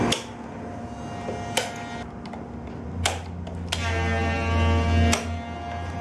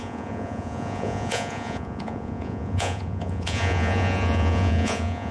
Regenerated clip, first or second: second